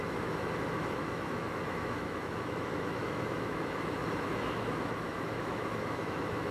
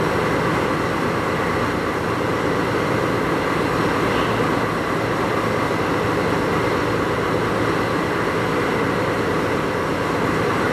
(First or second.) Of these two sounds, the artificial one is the first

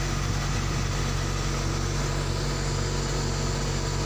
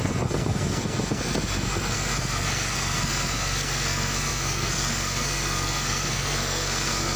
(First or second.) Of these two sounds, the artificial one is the second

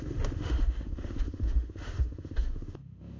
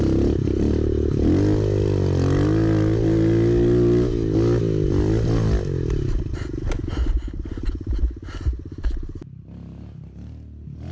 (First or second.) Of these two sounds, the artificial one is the first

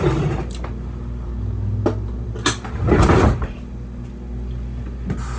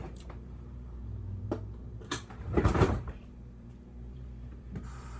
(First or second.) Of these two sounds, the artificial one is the second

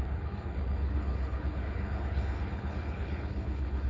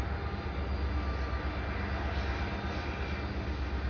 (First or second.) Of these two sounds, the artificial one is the first